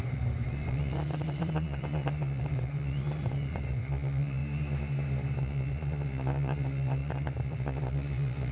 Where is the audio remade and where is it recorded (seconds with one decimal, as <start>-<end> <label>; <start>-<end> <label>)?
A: 0.0-4.4 remade; 4.4-5.4 recorded; 5.4-8.5 remade